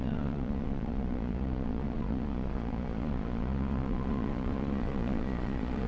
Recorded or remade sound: remade